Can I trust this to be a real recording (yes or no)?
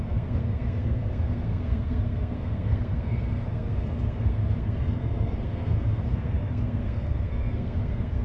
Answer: no